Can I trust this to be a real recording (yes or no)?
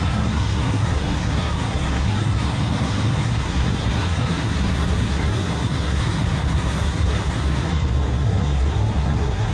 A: no